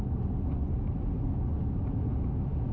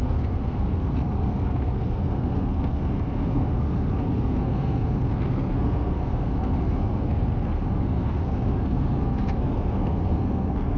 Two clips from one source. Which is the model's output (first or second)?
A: second